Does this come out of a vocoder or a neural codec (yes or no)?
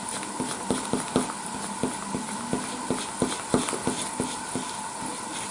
no